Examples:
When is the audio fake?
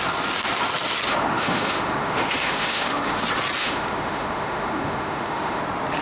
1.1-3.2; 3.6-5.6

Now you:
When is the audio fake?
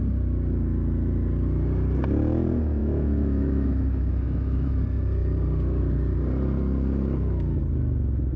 2.8-4.7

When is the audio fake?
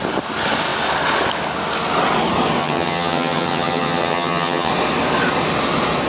2.6-4.7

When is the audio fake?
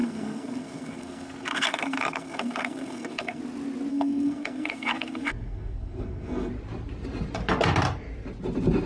0.0-3.4; 3.9-6.5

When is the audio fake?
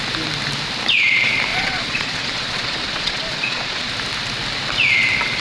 1.5-3.9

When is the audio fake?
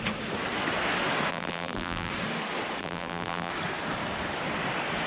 1.3-2.1; 2.8-3.5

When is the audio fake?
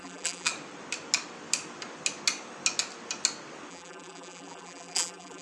0.0-0.5; 3.7-5.4